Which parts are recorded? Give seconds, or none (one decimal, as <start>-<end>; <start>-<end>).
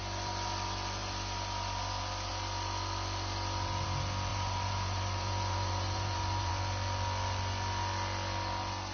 0.0-4.3; 6.5-8.9